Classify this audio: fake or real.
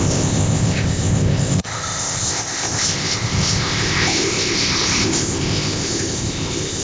fake